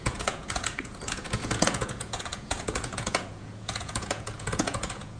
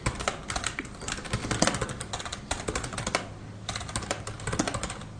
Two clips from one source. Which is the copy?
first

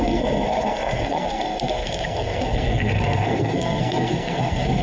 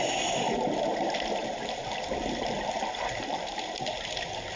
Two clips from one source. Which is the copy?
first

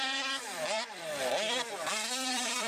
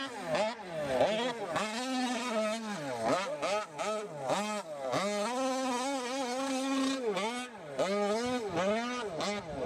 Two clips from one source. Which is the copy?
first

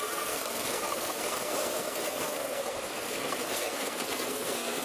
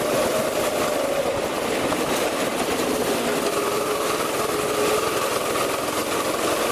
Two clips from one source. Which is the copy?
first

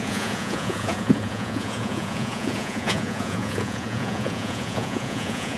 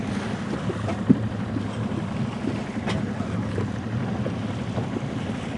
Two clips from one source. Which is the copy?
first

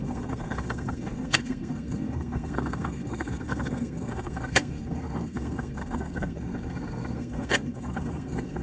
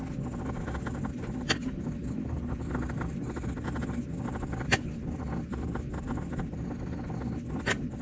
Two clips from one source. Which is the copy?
first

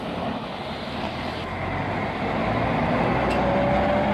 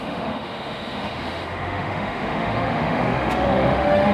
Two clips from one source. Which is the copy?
second